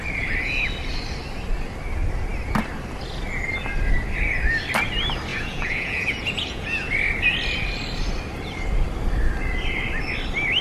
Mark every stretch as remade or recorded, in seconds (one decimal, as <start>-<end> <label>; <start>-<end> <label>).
0.0-5.3 recorded; 5.3-6.9 remade; 6.9-10.6 recorded